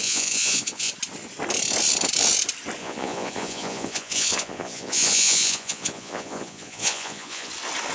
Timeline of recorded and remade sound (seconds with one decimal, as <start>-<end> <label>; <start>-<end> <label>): 0.0-0.9 remade; 0.9-2.8 recorded; 2.8-7.5 remade; 7.5-7.9 recorded